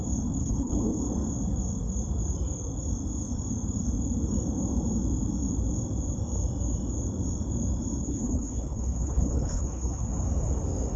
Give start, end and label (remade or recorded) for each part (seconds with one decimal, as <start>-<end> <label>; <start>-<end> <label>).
0.0-0.4 recorded; 0.4-1.0 remade; 1.0-8.0 recorded; 8.0-10.1 remade; 10.1-11.0 recorded